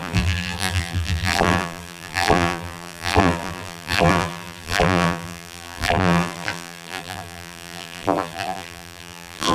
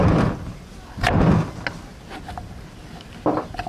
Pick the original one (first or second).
second